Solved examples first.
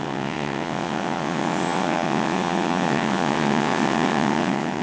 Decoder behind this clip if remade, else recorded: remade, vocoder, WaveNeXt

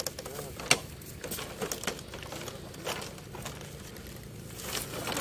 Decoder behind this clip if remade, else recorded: recorded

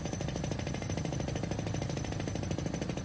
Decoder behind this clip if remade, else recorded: recorded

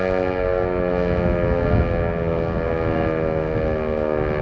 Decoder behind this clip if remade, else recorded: recorded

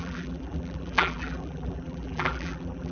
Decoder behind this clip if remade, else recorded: remade, vocoder, BigVGAN v2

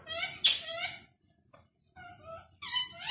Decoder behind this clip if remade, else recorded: recorded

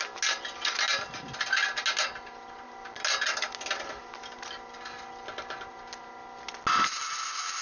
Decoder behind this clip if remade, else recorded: recorded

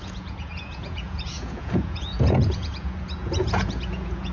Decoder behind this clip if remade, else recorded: remade, vocoder, Vocos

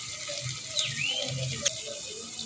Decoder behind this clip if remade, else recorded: recorded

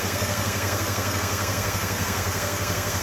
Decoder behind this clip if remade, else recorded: remade, codec, SNAC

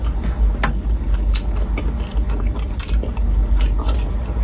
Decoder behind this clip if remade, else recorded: recorded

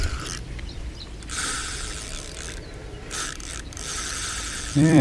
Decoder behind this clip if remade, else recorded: remade, vocoder, BigVGAN v2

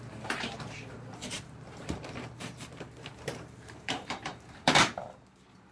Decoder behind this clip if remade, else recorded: remade, vocoder, BigVGAN v2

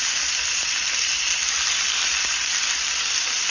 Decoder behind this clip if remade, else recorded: recorded